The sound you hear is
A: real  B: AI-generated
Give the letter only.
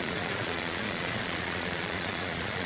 B